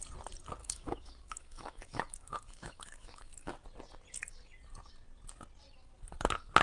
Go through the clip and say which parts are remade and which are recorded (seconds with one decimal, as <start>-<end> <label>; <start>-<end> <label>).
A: 0.0-0.6 recorded; 0.6-3.5 remade; 3.5-6.6 recorded

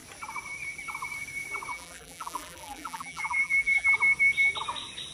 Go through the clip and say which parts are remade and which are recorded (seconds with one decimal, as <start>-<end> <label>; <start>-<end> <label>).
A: 0.0-1.7 recorded; 1.7-3.9 remade; 3.9-5.1 recorded